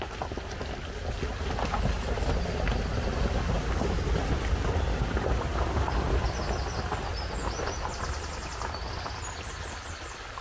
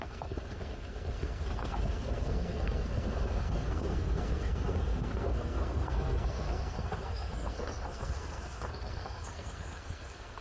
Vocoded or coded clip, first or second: second